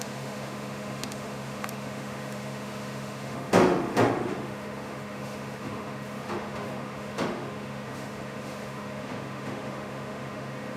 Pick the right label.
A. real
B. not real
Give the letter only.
B